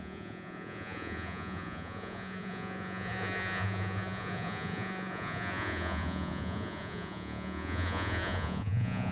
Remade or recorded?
remade